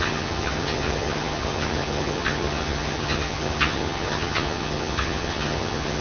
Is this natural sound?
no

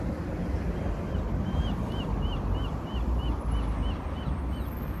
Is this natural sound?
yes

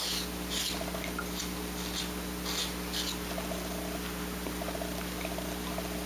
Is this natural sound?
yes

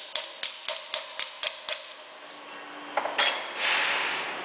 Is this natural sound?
yes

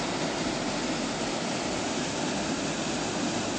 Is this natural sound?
yes